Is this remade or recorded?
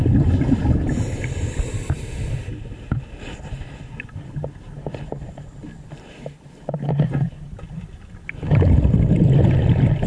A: recorded